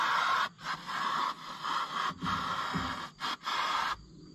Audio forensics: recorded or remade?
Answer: recorded